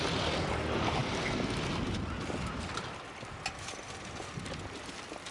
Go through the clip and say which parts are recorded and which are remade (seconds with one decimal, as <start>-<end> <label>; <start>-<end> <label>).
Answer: 0.0-5.3 recorded